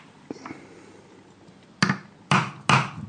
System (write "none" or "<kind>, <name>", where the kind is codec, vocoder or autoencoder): none